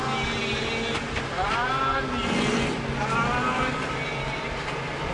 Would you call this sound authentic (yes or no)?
yes